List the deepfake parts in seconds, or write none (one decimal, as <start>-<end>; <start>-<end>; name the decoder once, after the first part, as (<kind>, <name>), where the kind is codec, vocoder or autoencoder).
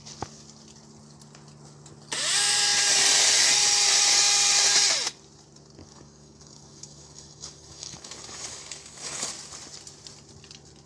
5.8-9.3 (codec, DAC)